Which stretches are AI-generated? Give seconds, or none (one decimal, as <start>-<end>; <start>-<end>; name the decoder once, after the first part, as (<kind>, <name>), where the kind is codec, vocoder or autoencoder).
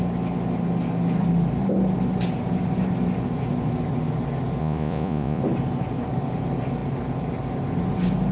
4.6-5.4 (vocoder, Vocos)